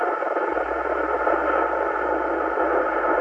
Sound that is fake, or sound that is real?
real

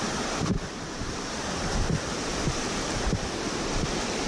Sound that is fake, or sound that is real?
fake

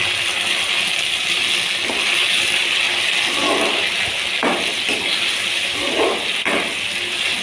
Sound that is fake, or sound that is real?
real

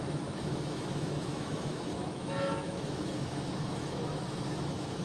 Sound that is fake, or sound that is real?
fake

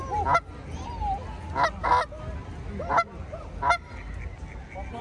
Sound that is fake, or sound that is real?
real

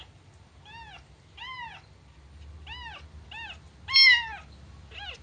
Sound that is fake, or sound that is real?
real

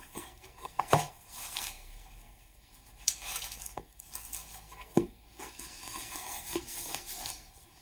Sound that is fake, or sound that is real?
fake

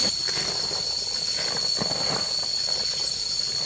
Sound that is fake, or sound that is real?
real